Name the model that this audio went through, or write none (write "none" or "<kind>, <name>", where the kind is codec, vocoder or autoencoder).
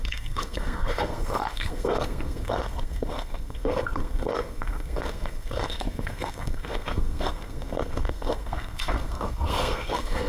codec, SNAC